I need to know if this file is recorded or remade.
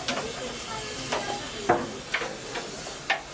recorded